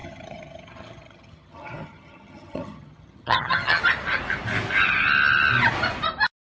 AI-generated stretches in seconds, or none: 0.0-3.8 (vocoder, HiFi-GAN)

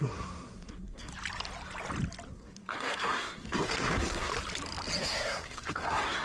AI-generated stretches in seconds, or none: 0.0-1.1 (codec, SNAC); 2.3-4.3; 5.0-6.2